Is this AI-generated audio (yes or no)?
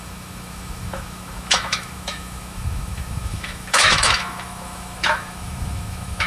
yes